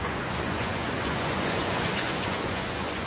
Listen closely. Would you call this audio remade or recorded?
remade